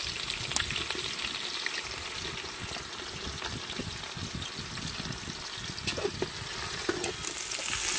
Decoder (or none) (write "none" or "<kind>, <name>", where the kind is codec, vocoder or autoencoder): none